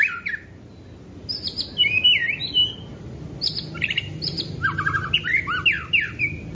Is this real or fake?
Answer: real